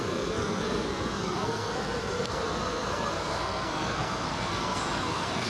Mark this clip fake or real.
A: fake